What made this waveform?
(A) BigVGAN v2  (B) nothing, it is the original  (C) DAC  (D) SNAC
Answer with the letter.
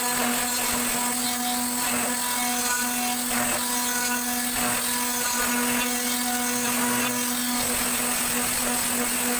B